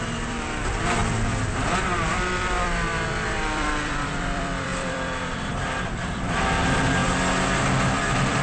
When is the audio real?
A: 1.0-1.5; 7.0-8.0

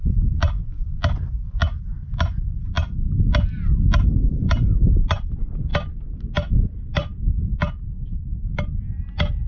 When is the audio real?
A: 0.6-4.3; 5.7-6.8; 7.5-9.5